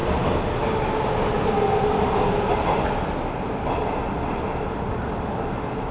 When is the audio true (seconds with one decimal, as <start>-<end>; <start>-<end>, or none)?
0.0-5.9